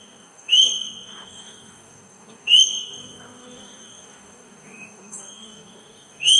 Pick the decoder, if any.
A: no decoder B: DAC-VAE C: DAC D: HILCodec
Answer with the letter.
C